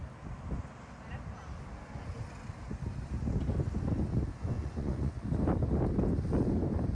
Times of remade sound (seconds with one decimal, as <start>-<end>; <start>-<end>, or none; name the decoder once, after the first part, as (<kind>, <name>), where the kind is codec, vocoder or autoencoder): 4.4-5.1 (vocoder, Vocos)